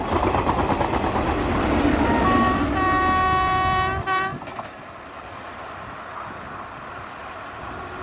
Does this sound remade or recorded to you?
recorded